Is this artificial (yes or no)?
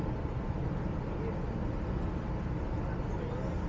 no